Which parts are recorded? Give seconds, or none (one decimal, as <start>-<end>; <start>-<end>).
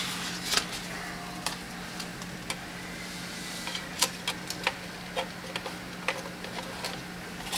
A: 0.0-7.6